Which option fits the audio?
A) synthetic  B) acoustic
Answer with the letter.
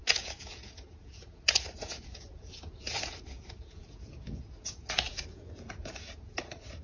A